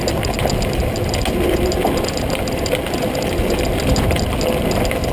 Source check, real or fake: real